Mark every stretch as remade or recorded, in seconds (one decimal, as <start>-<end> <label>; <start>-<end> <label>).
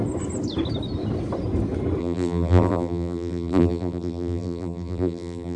0.0-2.0 recorded; 2.0-5.6 remade